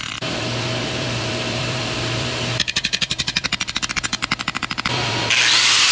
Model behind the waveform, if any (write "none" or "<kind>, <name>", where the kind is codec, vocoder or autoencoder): vocoder, BigVGAN v2